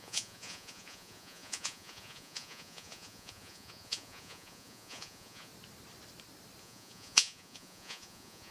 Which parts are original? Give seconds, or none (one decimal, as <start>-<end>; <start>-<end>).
5.5-6.6